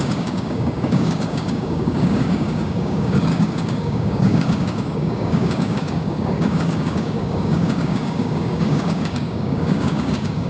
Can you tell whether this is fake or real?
fake